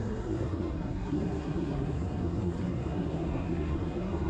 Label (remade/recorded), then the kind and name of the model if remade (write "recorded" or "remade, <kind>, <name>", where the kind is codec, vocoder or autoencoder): remade, codec, SNAC